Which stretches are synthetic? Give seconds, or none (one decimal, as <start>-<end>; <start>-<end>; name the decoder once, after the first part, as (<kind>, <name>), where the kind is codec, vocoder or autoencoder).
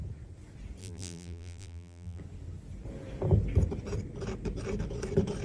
0.8-2.2 (vocoder, BigVGAN v2)